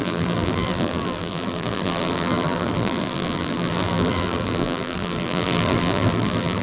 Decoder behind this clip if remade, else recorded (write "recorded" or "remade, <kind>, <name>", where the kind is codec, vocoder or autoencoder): remade, vocoder, BigVGAN v2